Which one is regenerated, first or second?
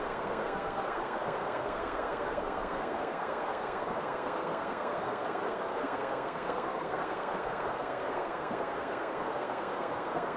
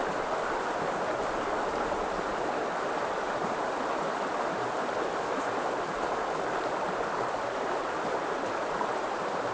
first